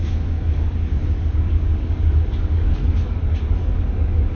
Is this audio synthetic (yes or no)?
yes